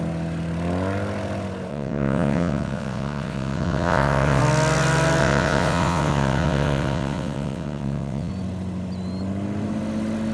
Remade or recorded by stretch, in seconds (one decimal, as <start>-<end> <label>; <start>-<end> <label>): 0.0-1.7 recorded; 1.7-4.4 remade; 4.4-5.2 recorded; 5.2-8.3 remade; 8.3-10.3 recorded